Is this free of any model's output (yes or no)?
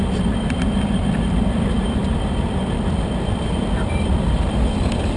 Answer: no